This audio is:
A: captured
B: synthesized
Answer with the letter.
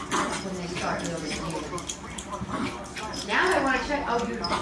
A